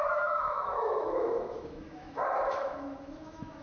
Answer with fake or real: fake